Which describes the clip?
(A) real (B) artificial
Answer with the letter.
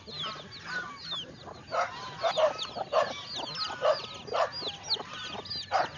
A